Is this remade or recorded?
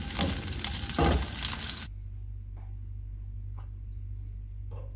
recorded